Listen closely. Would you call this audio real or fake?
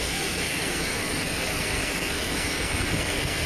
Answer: fake